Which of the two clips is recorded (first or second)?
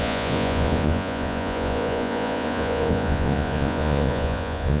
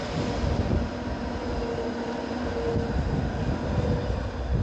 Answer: second